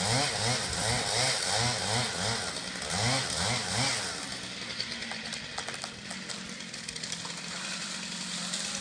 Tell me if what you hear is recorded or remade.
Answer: recorded